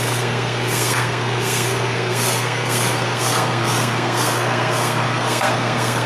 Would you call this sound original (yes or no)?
no